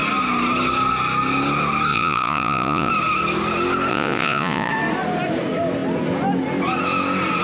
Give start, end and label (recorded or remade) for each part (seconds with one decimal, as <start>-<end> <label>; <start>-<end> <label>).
0.0-1.9 recorded; 1.9-2.9 remade; 2.9-3.9 recorded; 3.9-4.7 remade; 4.7-7.4 recorded